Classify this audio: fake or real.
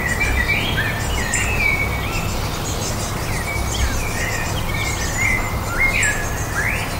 real